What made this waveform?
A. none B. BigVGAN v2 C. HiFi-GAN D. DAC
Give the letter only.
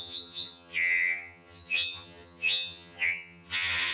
C